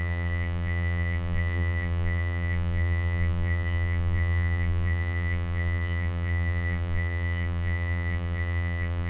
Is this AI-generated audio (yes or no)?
yes